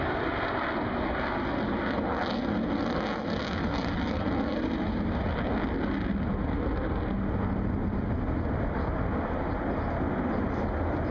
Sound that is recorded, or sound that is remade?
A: recorded